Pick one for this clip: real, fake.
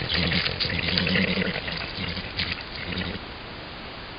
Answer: real